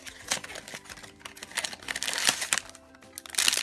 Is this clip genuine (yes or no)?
yes